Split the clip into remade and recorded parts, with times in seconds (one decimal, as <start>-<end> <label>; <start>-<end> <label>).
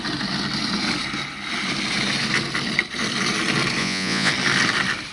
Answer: 0.0-3.8 recorded; 3.8-4.3 remade; 4.3-5.1 recorded